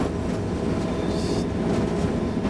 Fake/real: real